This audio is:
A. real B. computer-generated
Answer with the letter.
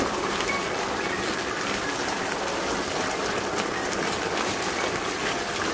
B